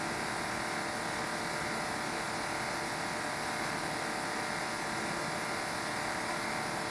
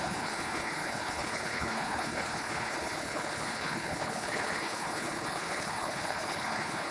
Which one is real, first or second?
first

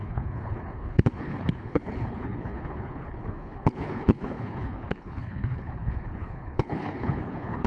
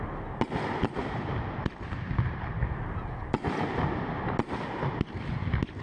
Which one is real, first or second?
second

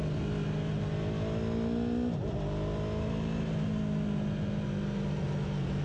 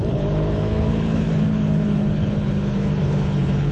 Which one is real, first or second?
first